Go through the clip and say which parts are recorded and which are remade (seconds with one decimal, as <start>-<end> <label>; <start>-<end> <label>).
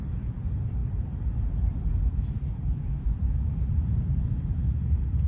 0.0-5.3 remade